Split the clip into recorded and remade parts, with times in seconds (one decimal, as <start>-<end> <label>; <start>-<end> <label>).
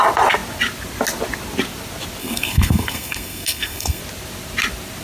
0.0-2.2 recorded; 2.2-4.0 remade; 4.0-5.0 recorded